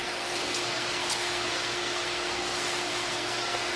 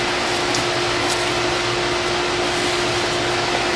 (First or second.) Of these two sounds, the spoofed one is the first